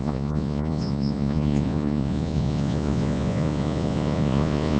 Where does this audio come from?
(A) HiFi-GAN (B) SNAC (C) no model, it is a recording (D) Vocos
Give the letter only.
D